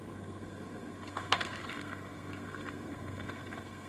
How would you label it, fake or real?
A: fake